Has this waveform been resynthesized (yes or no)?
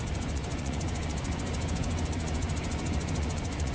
yes